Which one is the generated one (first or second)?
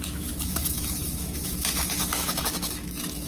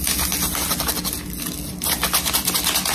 first